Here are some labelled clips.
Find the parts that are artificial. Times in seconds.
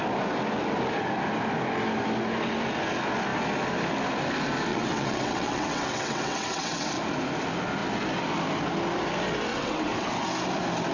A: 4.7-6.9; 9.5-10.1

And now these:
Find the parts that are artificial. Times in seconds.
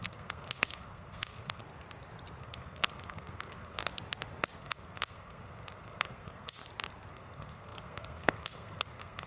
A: 0.0-1.6; 2.4-3.8; 4.6-6.6; 7.1-9.3